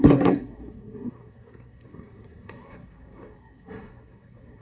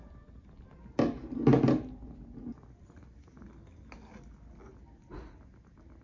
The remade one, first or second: first